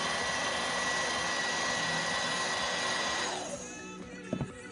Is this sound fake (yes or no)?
no